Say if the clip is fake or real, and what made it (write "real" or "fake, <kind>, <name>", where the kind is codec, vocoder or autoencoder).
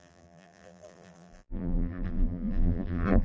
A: fake, vocoder, BigVGAN v2